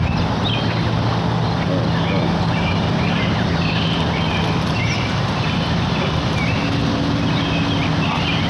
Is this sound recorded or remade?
recorded